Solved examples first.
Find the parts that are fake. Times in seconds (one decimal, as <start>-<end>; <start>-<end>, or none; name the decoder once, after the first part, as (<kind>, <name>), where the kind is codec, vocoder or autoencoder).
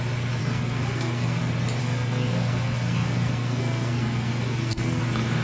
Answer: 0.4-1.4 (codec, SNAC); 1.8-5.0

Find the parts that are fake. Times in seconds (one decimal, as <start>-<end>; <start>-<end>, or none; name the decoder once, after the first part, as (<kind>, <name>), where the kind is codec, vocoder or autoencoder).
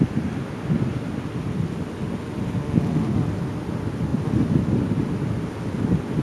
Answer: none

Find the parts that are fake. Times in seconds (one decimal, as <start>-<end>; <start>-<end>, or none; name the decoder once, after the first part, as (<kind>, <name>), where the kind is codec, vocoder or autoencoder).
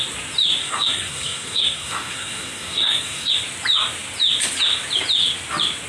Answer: 0.6-3.3 (codec, SNAC)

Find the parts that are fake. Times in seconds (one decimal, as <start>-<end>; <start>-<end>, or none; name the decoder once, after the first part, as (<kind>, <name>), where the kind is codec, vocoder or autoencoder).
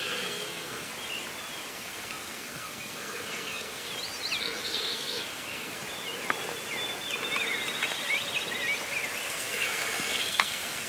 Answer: 0.0-0.9 (codec, SNAC); 1.7-3.9; 4.4-5.8; 9.3-10.9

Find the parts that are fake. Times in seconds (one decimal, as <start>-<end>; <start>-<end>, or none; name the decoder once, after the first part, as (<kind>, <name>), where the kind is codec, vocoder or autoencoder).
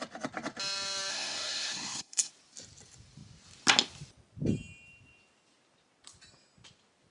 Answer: 1.1-2.3 (codec, SNAC)